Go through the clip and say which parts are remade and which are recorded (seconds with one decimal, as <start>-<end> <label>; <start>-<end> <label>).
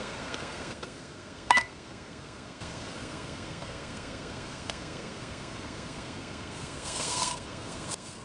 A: 0.0-8.2 remade